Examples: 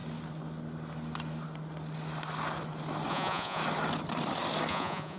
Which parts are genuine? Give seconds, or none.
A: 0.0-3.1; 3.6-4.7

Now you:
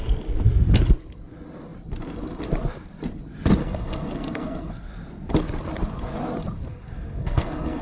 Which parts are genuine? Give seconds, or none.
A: 0.0-3.6; 4.7-6.7

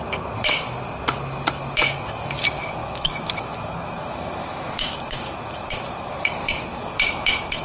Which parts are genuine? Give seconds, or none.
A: 0.0-2.8; 6.3-6.7

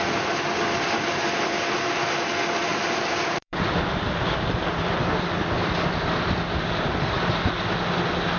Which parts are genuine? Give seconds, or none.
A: 0.0-2.7; 4.2-8.4

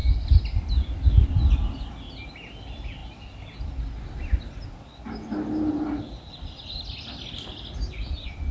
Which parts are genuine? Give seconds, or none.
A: 0.0-8.5

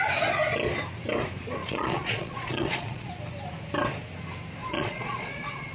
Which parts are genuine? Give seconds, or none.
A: 0.0-1.6; 3.1-4.6